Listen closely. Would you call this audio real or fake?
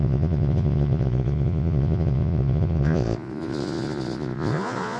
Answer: fake